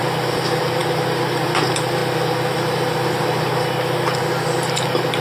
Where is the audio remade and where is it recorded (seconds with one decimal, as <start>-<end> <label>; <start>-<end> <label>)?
0.0-0.8 remade; 0.8-1.6 recorded; 1.6-2.0 remade; 2.0-4.7 recorded; 4.7-5.2 remade